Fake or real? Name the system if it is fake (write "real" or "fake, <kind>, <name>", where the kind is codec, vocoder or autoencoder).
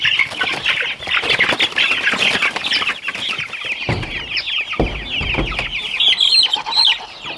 real